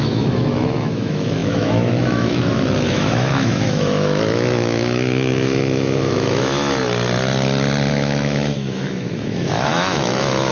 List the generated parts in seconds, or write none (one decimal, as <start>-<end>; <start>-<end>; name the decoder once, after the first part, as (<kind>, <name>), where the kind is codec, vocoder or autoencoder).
0.0-6.8 (autoencoder, DAC-VAE); 7.9-10.5